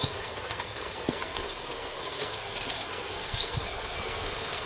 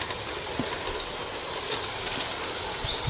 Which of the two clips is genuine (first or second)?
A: second